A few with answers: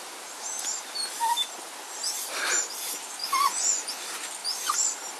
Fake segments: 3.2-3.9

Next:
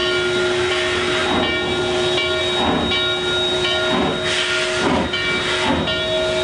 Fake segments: none

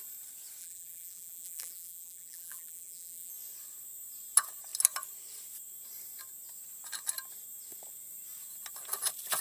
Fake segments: 0.6-3.3

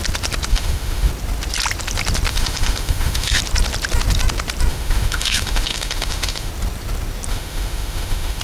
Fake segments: 0.5-1.1; 2.3-3.4; 4.7-6.5; 7.3-8.4

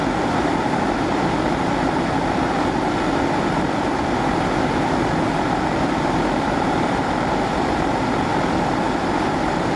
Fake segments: none

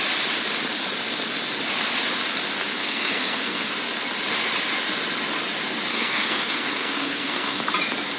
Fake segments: 2.7-3.7; 5.9-7.6